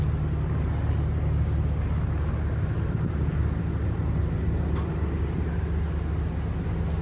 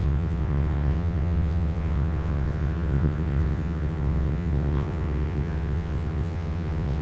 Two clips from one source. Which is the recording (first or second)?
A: first